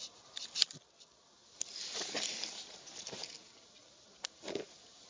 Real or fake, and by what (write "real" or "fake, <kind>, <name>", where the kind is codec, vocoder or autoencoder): real